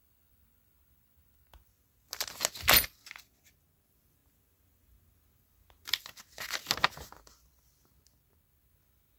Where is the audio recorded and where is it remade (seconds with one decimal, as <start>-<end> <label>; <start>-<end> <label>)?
0.0-9.2 recorded